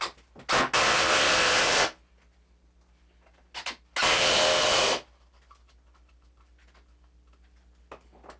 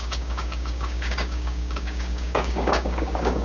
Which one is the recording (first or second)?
first